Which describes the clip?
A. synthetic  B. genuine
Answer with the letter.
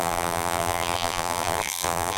A